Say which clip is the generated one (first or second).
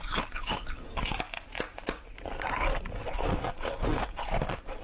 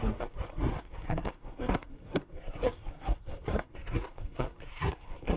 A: second